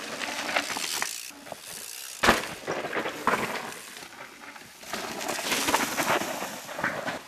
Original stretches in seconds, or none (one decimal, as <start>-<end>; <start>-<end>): 0.0-7.3